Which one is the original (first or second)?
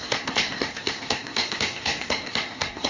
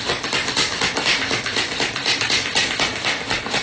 second